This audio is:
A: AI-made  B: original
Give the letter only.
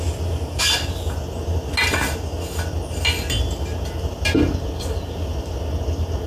B